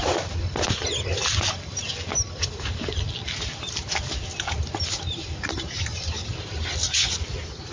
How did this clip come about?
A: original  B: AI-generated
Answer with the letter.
A